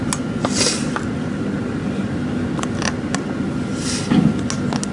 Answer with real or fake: real